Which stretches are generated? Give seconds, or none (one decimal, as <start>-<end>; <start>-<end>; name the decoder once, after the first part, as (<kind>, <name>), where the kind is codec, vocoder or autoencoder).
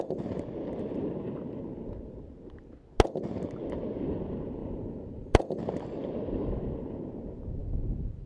4.6-5.6 (vocoder, BigVGAN v2); 7.6-8.3